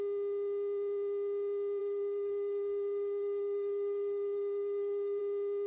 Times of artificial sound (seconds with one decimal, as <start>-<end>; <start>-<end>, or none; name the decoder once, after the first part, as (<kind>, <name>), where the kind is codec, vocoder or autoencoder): 1.8-5.2 (codec, DAC)